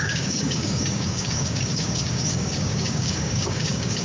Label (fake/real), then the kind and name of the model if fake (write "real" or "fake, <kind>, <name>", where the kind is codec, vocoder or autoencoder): fake, codec, DAC